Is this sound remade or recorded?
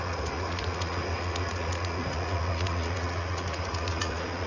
remade